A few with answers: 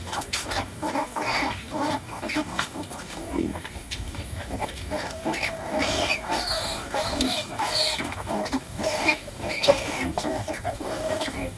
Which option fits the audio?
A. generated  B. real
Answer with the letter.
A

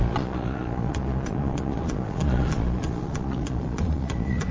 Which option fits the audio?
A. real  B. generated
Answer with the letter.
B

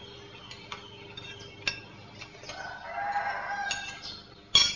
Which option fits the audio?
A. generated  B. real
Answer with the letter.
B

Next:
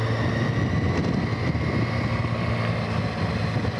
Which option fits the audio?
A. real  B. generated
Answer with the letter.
A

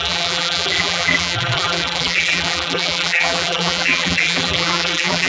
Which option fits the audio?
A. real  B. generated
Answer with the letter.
B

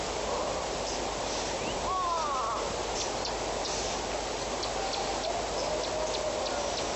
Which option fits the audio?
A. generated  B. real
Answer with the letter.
B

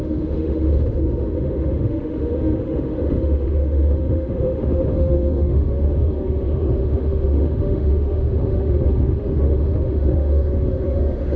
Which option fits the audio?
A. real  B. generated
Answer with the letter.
B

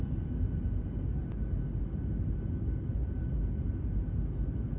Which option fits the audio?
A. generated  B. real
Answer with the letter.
B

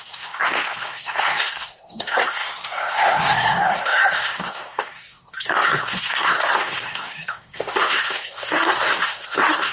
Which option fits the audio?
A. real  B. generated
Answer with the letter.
B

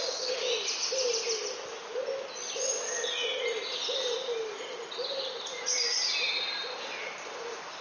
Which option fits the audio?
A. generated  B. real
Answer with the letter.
B